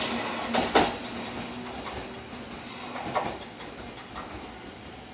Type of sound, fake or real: real